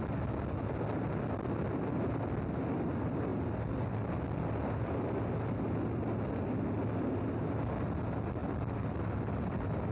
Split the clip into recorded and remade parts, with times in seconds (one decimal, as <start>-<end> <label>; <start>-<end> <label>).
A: 0.0-9.9 recorded